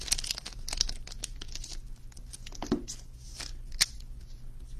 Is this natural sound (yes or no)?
yes